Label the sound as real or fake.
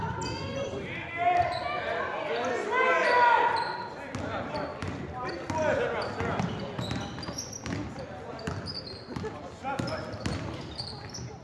real